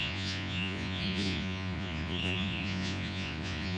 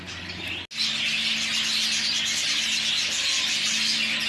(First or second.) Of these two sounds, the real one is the second